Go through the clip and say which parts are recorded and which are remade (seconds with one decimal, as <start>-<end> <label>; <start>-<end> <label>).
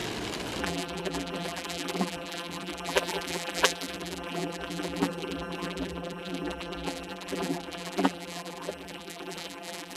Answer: 0.0-0.6 recorded; 0.6-10.0 remade